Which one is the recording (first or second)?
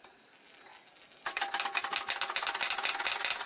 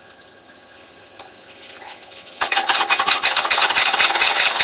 first